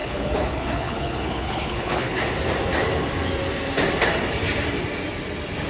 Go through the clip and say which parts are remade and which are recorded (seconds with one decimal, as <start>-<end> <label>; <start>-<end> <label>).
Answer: 0.0-2.2 remade; 2.2-5.7 recorded